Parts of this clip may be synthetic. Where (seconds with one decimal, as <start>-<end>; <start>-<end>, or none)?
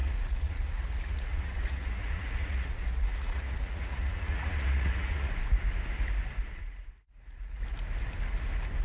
0.0-5.3; 6.6-7.6